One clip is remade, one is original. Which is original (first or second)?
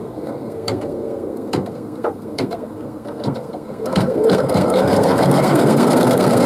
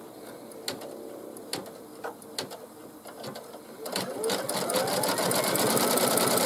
second